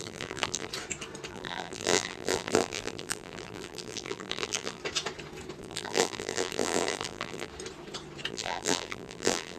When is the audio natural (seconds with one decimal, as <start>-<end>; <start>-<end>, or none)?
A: 0.7-1.3; 4.8-5.6; 7.5-8.3